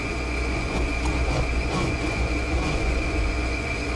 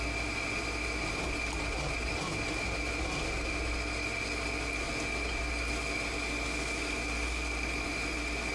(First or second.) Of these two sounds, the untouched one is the second